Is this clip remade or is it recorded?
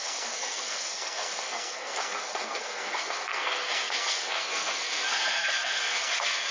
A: remade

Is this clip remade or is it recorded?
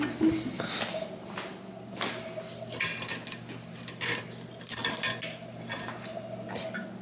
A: recorded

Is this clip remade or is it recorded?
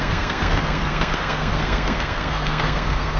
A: remade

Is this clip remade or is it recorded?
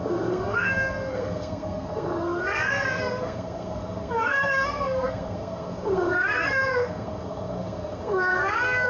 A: remade